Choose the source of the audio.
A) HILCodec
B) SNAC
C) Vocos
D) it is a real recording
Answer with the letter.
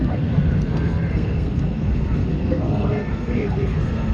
B